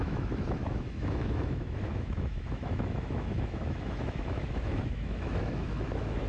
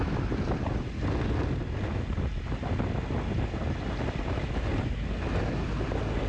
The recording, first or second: second